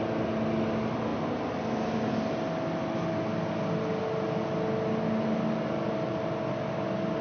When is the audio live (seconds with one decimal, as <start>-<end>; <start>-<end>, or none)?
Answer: 0.0-7.2